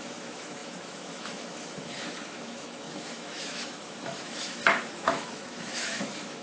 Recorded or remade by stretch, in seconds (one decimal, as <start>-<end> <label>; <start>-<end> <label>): 0.0-6.4 remade